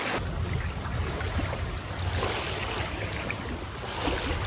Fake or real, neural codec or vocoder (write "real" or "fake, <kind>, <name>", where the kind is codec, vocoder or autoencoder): real